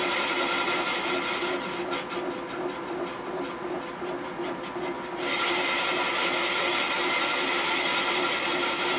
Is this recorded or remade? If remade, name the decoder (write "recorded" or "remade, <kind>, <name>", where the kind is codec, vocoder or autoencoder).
remade, vocoder, BigVGAN v2